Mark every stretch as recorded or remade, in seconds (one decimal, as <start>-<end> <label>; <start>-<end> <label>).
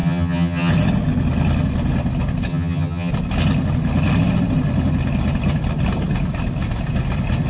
0.0-0.7 remade; 0.7-2.5 recorded; 2.5-3.1 remade; 3.1-7.5 recorded